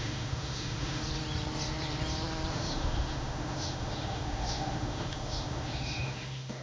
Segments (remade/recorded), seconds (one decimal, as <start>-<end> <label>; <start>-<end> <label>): 0.0-1.0 remade; 1.0-2.5 recorded; 2.5-6.6 remade